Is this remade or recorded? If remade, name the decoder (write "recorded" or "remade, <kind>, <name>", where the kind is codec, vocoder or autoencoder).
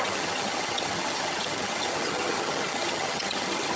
remade, vocoder, HiFi-GAN